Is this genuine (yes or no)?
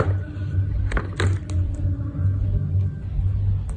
yes